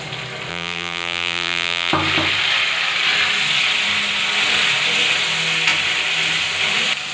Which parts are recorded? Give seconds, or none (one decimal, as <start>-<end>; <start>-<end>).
0.0-0.5; 1.9-7.1